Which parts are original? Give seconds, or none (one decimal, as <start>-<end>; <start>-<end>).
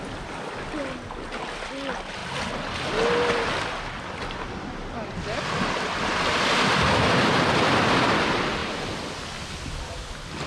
0.0-10.5